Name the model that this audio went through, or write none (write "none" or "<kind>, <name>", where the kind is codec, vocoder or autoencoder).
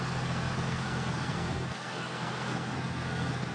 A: codec, SNAC